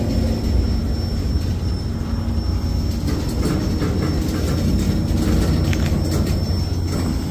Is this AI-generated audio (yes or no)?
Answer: no